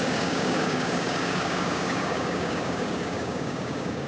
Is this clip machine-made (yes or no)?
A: yes